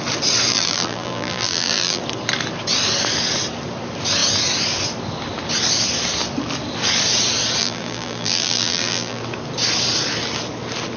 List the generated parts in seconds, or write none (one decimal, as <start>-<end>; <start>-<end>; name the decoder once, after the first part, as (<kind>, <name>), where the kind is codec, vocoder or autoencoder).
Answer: 0.5-2.0 (vocoder, BigVGAN v2); 7.6-9.2